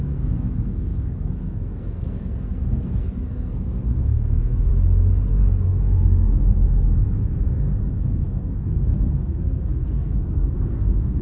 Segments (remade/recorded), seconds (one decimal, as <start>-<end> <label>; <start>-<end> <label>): 0.0-4.7 remade; 4.7-5.3 recorded; 5.3-11.2 remade